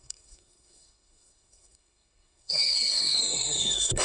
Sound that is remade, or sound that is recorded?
remade